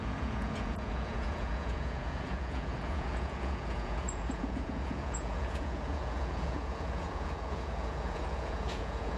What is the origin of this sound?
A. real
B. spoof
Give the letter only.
B